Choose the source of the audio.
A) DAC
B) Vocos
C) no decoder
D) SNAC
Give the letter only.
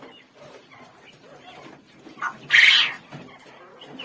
C